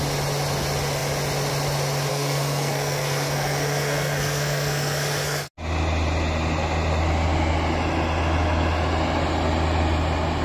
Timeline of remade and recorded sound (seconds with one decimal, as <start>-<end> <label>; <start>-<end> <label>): 0.0-2.1 recorded; 2.1-5.5 remade; 5.5-10.4 recorded

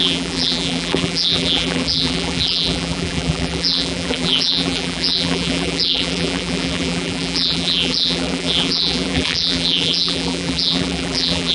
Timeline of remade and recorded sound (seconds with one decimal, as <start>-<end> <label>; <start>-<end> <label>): 0.0-11.5 remade

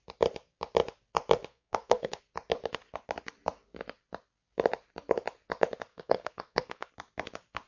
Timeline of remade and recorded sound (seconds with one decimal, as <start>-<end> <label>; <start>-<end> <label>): 0.0-1.5 recorded; 1.5-2.2 remade; 2.2-5.9 recorded; 5.9-6.9 remade; 6.9-7.7 recorded

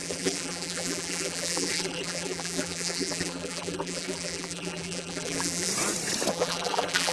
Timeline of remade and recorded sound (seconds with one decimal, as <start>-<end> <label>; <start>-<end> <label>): 0.0-5.7 remade; 5.7-6.3 recorded; 6.3-7.1 remade